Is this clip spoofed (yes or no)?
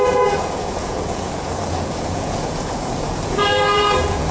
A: yes